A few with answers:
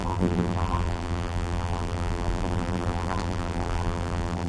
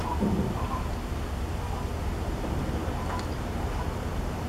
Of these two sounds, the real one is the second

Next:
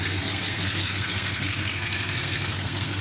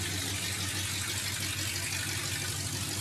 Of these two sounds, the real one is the second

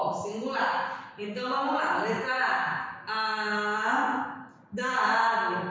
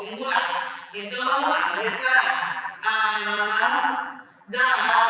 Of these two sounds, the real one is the first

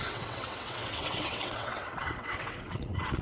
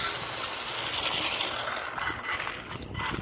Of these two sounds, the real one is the second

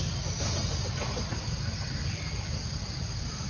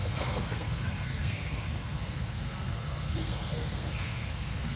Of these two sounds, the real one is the first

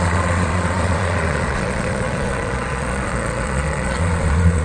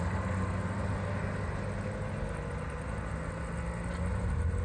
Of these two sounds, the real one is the second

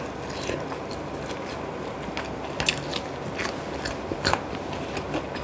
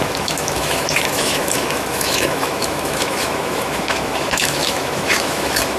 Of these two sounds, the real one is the first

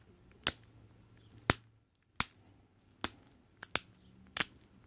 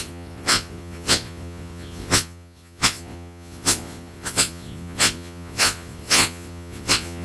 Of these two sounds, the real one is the first